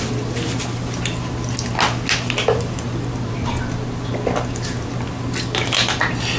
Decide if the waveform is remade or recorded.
recorded